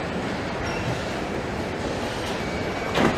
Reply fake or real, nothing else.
real